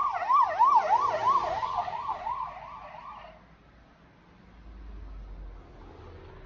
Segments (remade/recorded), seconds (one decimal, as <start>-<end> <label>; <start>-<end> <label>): 0.0-6.5 recorded